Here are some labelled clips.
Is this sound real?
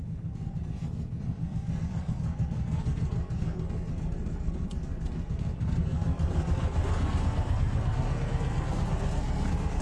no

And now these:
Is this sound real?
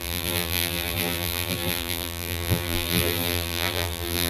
no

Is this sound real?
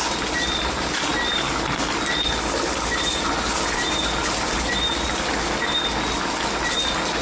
yes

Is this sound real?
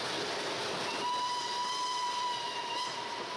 yes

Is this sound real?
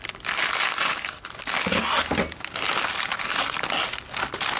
yes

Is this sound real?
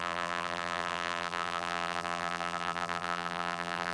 no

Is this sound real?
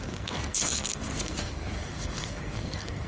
no